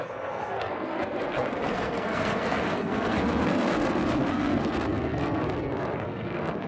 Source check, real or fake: fake